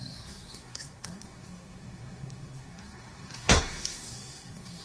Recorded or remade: remade